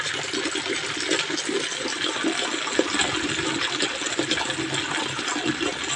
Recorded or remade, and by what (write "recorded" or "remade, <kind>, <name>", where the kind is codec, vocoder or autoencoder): recorded